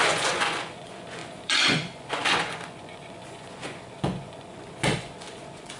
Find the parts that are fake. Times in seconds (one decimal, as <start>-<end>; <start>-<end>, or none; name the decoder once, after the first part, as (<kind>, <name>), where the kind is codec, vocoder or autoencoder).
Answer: 0.0-5.8 (vocoder, Vocos)